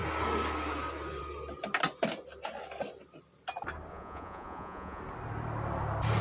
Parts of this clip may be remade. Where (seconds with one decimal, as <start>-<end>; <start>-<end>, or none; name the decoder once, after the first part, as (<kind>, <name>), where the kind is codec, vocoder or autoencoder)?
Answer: 3.9-5.0 (vocoder, Vocos)